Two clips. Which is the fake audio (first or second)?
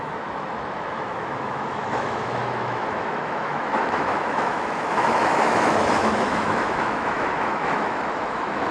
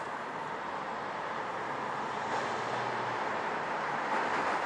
first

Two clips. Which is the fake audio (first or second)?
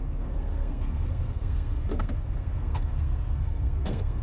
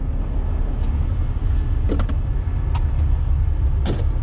first